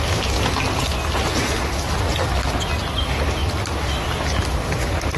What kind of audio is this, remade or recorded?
recorded